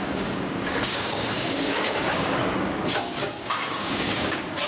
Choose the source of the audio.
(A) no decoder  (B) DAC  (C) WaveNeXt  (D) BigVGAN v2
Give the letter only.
B